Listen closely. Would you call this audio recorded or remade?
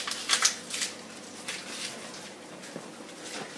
recorded